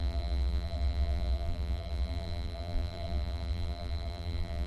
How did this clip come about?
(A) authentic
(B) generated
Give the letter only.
B